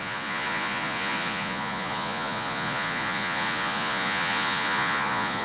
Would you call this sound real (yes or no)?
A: no